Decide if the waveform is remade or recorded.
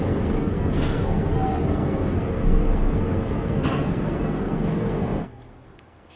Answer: remade